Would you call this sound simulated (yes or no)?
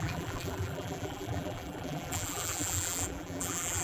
yes